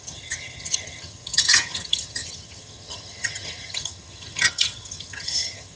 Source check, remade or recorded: remade